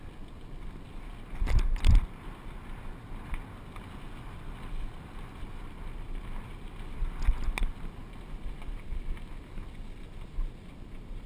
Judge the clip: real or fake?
real